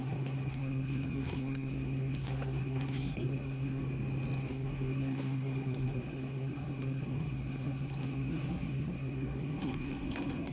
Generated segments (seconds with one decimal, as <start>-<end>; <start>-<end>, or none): 0.0-3.8; 4.5-10.5